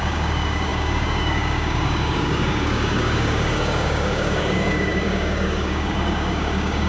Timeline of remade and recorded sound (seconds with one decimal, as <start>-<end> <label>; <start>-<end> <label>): 0.0-6.9 remade